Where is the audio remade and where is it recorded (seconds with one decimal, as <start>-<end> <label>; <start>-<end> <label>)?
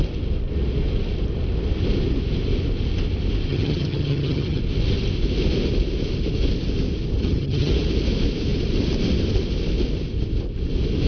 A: 0.0-3.5 recorded; 3.5-4.6 remade; 4.6-7.2 recorded; 7.2-7.7 remade; 7.7-11.1 recorded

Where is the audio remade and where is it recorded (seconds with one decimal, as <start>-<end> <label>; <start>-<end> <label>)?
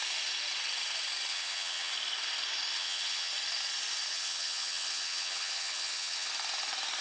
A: 0.0-1.3 recorded; 1.3-1.9 remade; 1.9-2.7 recorded; 2.7-3.3 remade; 3.3-4.1 recorded; 4.1-6.3 remade; 6.3-7.0 recorded